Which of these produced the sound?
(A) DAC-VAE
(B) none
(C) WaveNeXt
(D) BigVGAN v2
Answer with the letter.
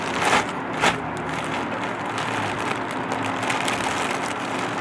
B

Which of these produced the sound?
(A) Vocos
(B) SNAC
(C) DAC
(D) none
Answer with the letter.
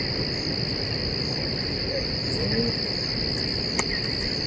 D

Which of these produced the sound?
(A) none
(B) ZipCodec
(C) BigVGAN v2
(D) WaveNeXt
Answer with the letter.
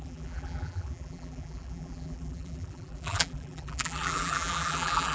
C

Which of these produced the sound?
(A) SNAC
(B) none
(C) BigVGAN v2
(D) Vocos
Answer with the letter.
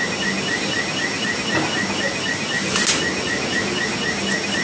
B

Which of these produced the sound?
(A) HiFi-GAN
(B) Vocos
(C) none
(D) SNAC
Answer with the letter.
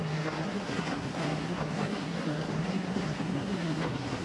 D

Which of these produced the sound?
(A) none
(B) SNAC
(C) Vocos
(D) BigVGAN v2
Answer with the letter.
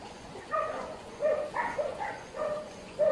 C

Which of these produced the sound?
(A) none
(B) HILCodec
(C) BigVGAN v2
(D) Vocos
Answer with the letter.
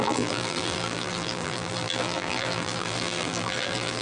C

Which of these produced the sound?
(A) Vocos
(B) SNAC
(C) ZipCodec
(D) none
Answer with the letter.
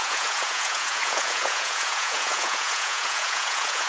A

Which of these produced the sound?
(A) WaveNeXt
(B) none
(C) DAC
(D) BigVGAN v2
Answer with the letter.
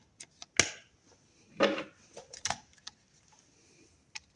B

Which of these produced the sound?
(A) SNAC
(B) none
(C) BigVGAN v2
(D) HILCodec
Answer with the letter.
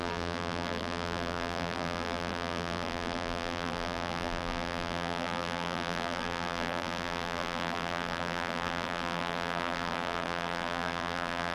C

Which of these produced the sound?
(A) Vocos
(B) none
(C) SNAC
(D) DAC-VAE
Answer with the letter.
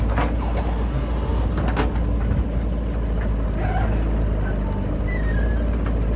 B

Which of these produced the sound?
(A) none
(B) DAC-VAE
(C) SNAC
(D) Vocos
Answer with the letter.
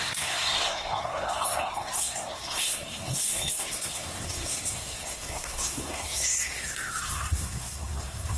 C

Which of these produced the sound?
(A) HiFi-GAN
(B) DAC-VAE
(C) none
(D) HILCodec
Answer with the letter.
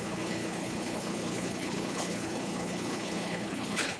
D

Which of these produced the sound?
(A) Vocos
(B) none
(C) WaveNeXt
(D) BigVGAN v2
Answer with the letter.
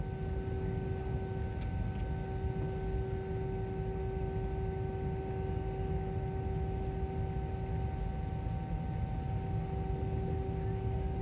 B